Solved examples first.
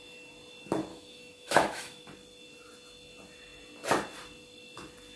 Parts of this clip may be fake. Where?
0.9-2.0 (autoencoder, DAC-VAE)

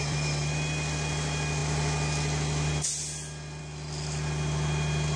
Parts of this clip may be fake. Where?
none

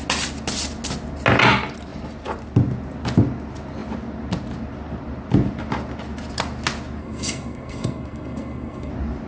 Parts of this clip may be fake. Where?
7.0-8.9 (codec, SNAC)

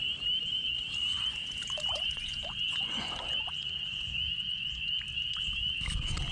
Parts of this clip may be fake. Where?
1.1-4.9 (vocoder, Vocos)

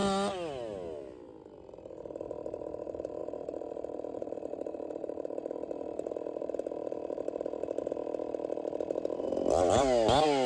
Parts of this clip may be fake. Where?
3.2-7.8 (vocoder, BigVGAN v2)

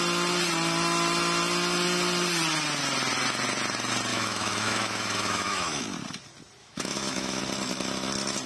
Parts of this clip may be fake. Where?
4.1-5.8 (autoencoder, DAC-VAE); 6.6-7.4

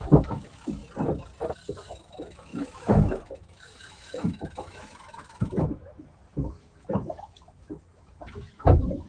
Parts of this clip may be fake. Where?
0.0-0.8 (autoencoder, DAC-VAE); 1.7-9.1

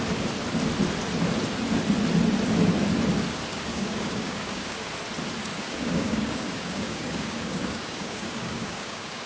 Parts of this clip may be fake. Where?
3.7-4.9 (codec, DAC); 5.4-9.3